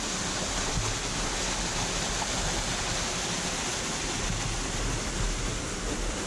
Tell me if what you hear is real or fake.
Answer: real